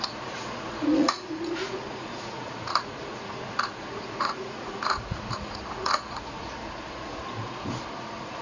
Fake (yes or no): yes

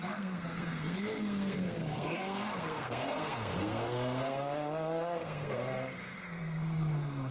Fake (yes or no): yes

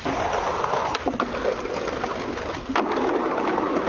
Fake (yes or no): no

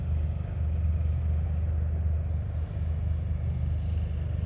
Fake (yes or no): no